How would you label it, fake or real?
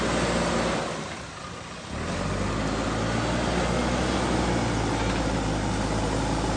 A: real